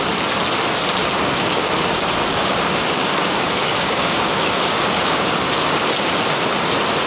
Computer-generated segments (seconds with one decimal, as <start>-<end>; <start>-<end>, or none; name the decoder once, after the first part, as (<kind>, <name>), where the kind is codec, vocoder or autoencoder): 1.0-1.7 (codec, DAC); 2.3-6.1